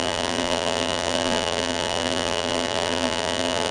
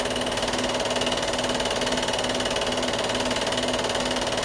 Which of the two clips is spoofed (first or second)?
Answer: first